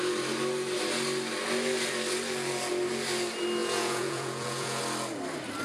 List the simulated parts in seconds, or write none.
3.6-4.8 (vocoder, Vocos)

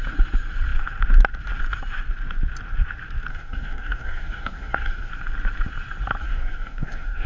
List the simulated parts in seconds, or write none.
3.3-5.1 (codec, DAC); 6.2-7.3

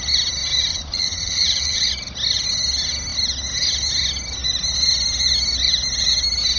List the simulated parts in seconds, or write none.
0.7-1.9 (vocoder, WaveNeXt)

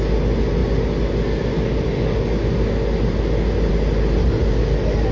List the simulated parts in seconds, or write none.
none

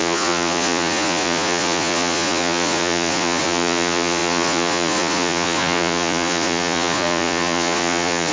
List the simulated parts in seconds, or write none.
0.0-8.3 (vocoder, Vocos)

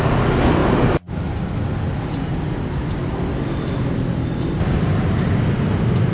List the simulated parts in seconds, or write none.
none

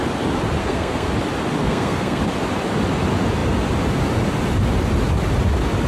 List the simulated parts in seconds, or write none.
0.6-1.1 (codec, SNAC); 1.6-2.2

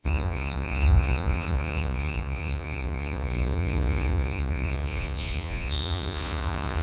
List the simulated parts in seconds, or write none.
0.0-6.8 (vocoder, Vocos)